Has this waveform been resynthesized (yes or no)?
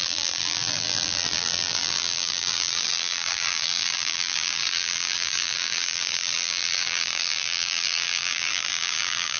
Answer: yes